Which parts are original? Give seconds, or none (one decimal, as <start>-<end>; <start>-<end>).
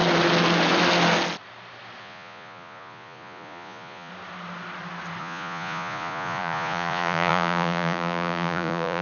0.0-2.0; 4.1-5.2